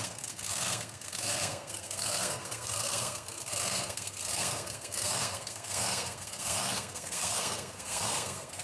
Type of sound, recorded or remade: remade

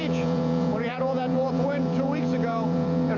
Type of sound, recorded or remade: remade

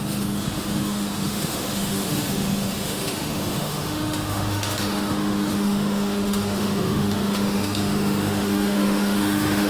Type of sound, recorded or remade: remade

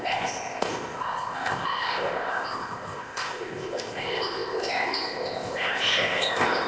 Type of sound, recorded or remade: remade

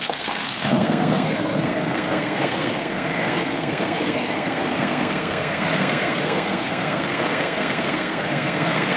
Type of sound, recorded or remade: remade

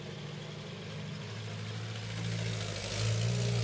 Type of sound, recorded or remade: recorded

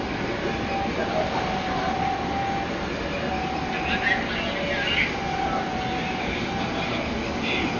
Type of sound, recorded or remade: recorded